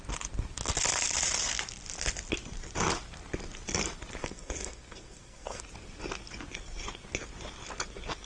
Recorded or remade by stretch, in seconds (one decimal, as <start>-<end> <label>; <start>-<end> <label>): 0.0-4.2 recorded; 4.2-5.6 remade; 5.6-8.3 recorded